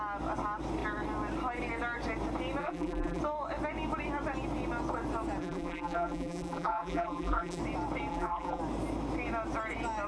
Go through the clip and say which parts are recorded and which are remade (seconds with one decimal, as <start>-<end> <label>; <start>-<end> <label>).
0.0-2.6 recorded; 2.6-3.2 remade; 3.2-5.4 recorded; 5.4-7.6 remade; 7.6-8.1 recorded; 8.1-8.6 remade; 8.6-10.1 recorded